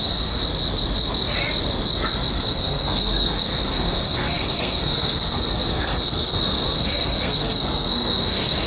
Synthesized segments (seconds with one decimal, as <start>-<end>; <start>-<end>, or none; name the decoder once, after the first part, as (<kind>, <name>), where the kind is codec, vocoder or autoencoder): 0.0-0.4 (codec, SNAC); 2.3-8.7